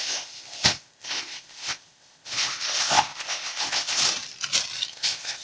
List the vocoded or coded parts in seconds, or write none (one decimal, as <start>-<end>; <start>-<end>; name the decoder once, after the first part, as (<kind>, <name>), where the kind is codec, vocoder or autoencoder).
0.0-4.0 (codec, ZipCodec); 4.9-5.4